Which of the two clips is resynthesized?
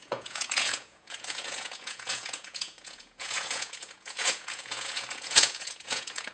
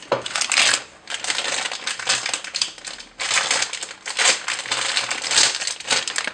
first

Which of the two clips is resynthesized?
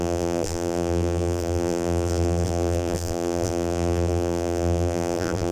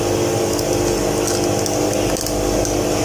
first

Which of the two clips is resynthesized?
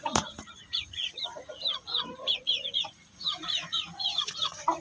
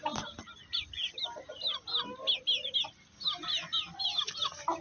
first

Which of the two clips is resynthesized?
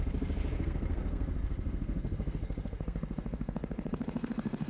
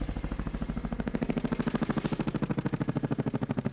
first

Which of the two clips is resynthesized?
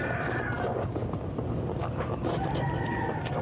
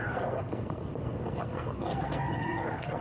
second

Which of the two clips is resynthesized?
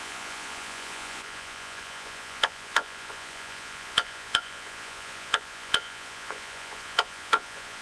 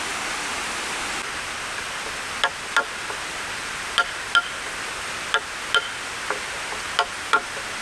first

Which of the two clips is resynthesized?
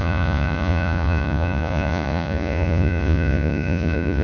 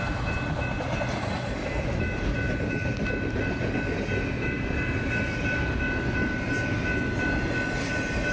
first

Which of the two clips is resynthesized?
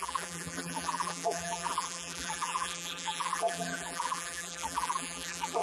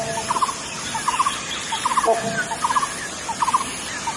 first